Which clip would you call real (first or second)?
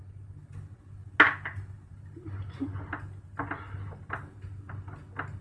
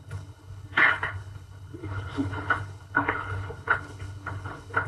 first